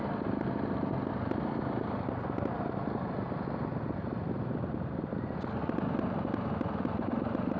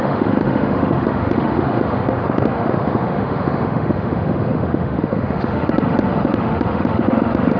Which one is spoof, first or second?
second